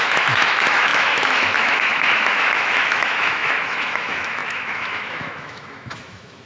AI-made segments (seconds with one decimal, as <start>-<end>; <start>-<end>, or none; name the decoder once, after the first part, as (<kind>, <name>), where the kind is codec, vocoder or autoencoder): 0.0-6.5 (autoencoder, DAC-VAE)